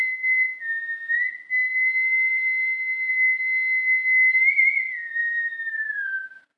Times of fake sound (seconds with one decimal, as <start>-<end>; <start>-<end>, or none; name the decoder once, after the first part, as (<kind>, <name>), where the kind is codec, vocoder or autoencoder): 2.3-3.1 (vocoder, BigVGAN v2); 5.5-6.6